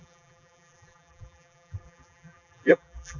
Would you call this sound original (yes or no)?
no